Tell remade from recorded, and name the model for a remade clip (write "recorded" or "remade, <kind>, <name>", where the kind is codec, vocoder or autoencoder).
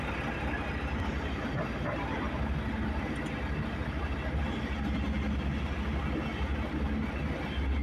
recorded